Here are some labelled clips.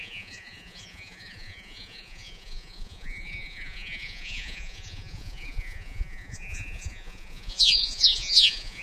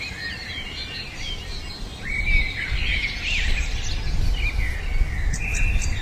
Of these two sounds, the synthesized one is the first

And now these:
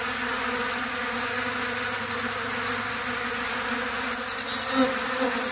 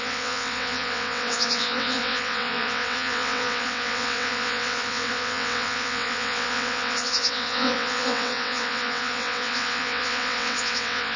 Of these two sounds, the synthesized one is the second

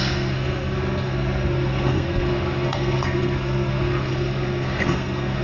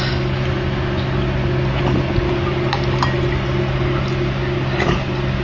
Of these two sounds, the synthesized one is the first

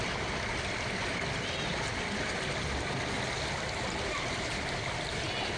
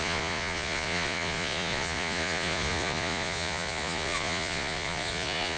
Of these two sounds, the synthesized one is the second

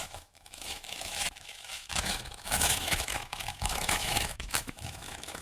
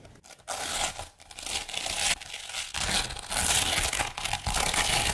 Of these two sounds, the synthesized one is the first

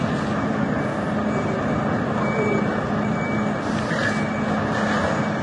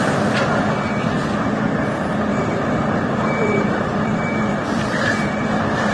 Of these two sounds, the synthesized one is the second